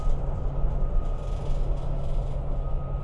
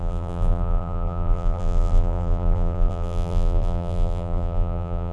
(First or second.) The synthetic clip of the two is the second